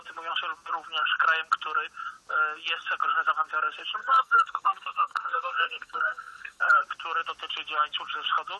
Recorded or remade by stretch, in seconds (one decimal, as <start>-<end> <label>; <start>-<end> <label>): 0.0-4.0 recorded; 4.0-6.6 remade; 6.6-8.6 recorded